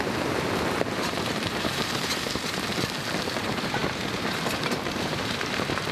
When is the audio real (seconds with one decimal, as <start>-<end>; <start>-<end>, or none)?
2.7-3.2